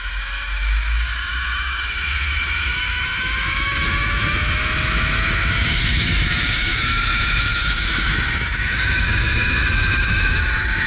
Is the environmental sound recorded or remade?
remade